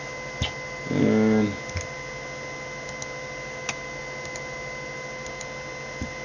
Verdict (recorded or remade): recorded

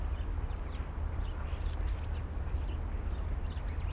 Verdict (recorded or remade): recorded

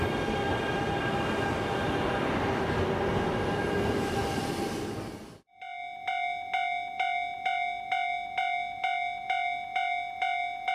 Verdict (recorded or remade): recorded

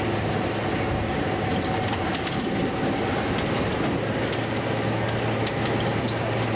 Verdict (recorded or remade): recorded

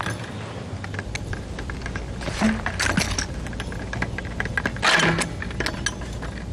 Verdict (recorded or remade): recorded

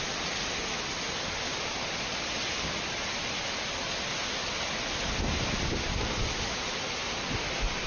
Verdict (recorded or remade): recorded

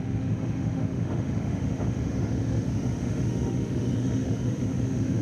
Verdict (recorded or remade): remade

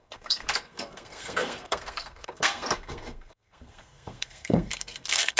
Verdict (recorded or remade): remade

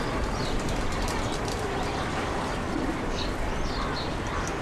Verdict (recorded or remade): remade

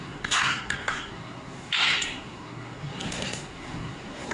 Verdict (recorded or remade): remade